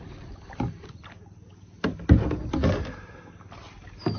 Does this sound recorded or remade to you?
recorded